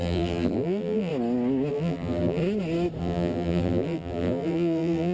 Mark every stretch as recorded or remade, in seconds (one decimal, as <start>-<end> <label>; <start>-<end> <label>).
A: 0.0-1.1 remade; 1.1-1.7 recorded; 1.7-2.4 remade; 2.4-3.0 recorded; 3.0-5.1 remade